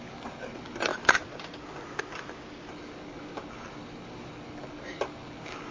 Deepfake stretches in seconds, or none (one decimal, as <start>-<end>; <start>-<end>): 0.0-0.9; 2.7-5.7

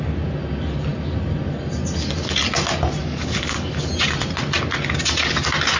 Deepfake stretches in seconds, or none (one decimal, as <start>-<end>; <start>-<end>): 3.0-3.9

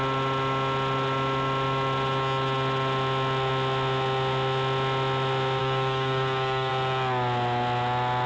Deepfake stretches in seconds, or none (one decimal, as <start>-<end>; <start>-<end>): 5.6-6.7